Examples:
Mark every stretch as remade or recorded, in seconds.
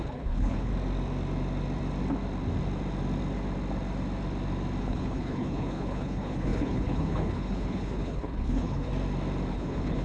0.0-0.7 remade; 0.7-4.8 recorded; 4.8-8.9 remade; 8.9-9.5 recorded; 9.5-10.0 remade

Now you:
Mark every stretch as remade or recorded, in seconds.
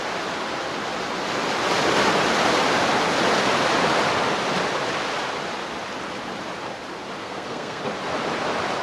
0.0-7.2 recorded; 7.2-7.8 remade; 7.8-8.8 recorded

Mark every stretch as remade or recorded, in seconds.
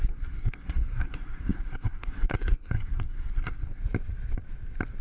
0.0-3.8 remade; 3.8-5.0 recorded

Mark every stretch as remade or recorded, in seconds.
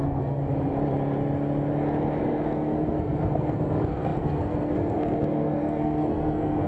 0.0-0.4 remade; 0.4-2.2 recorded; 2.2-6.7 remade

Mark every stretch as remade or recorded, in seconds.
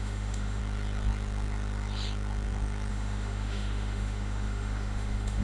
0.0-0.6 remade; 0.6-2.9 recorded; 2.9-5.4 remade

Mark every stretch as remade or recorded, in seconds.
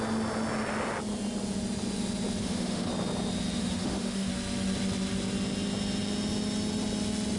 0.0-2.4 recorded; 2.4-2.9 remade; 2.9-3.6 recorded; 3.6-4.3 remade; 4.3-7.4 recorded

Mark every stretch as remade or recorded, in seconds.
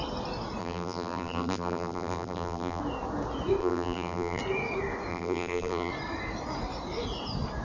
0.0-0.6 recorded; 0.6-2.8 remade; 2.8-3.6 recorded; 3.6-4.4 remade; 4.4-5.1 recorded; 5.1-5.9 remade; 5.9-7.6 recorded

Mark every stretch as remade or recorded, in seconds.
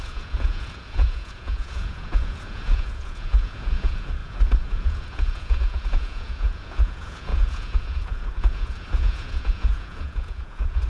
0.0-10.9 remade